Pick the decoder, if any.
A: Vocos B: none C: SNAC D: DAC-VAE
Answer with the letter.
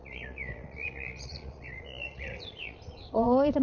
A